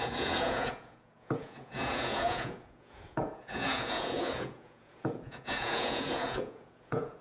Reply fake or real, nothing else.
fake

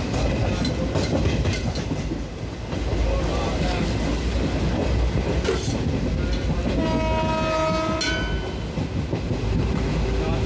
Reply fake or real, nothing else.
real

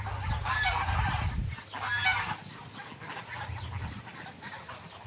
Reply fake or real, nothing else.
real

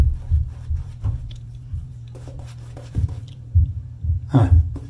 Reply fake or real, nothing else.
fake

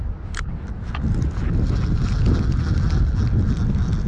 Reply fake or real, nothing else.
real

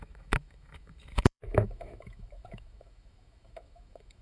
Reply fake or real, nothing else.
fake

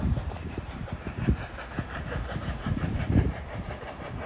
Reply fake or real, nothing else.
fake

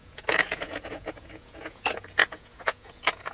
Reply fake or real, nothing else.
fake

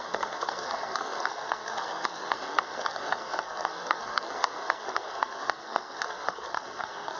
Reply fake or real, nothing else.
fake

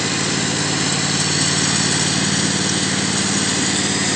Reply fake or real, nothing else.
real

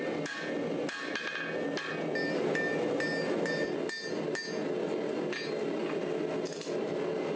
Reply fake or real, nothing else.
real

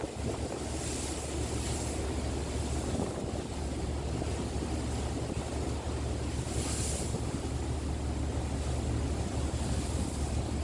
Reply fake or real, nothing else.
real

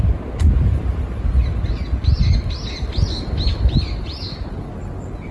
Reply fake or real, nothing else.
real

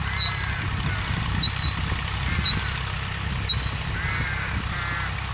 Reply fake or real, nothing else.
real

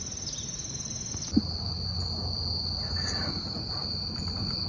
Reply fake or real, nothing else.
real